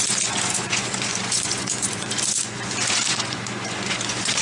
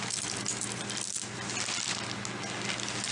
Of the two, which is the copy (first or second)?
first